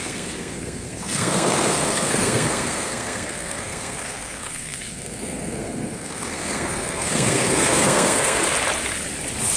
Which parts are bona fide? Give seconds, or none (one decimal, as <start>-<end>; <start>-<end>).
8.4-9.6